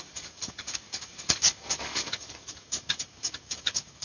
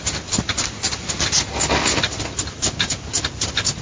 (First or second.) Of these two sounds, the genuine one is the second